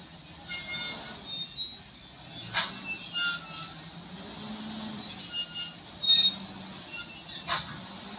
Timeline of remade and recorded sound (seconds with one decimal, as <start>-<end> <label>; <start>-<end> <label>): 0.0-8.2 recorded